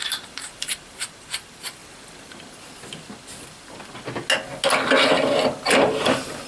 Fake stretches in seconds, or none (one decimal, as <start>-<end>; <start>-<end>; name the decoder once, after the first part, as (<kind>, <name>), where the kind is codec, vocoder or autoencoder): 0.0-1.8 (vocoder, BigVGAN v2); 5.7-6.5